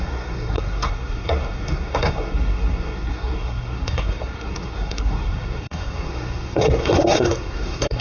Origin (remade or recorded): remade